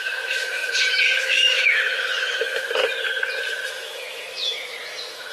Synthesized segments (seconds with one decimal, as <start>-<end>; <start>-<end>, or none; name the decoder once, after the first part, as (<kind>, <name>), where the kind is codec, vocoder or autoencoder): 0.0-2.8 (autoencoder, DAC-VAE); 3.7-5.3